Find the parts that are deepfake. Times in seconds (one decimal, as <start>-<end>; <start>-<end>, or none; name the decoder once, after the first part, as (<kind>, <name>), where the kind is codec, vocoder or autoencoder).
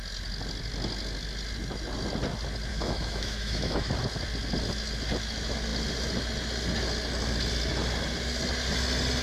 2.7-3.9 (autoencoder, DAC-VAE)